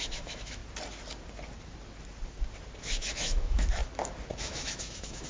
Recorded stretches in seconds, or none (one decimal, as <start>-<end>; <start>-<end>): 0.6-2.8; 3.8-4.4